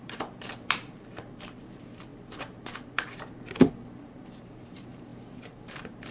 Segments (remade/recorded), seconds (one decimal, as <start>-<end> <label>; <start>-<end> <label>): 0.0-6.1 remade